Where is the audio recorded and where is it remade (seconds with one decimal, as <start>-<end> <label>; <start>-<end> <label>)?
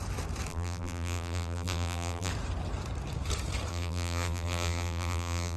0.0-0.5 recorded; 0.5-2.3 remade; 2.3-3.7 recorded; 3.7-5.6 remade